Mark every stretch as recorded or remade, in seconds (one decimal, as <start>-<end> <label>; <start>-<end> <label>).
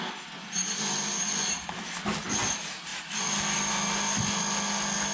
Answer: 0.0-5.1 recorded